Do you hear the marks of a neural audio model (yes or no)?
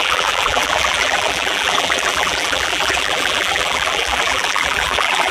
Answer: yes